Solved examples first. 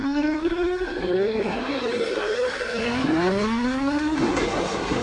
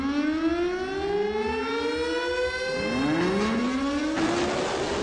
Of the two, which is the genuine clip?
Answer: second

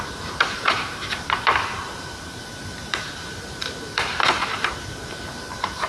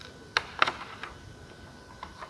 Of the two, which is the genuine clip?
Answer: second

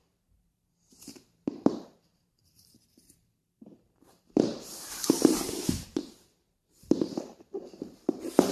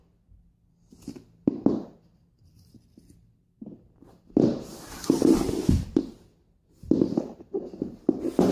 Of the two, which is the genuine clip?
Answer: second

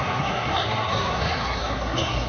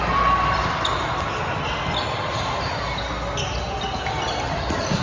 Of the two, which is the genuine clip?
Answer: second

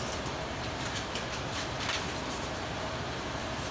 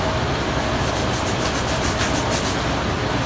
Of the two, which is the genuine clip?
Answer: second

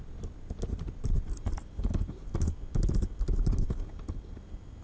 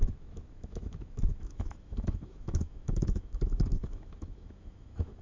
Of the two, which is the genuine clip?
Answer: first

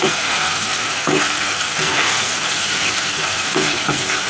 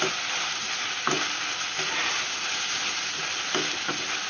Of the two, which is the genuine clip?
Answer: second